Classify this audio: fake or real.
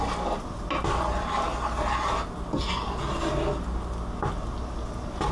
real